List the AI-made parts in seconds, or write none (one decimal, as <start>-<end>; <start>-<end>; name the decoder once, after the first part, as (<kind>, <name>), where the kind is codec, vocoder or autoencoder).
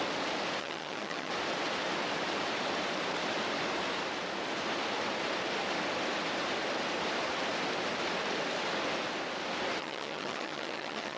0.6-1.3 (vocoder, HiFi-GAN); 9.8-11.2